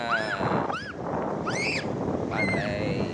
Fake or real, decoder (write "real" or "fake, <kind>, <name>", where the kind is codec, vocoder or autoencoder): real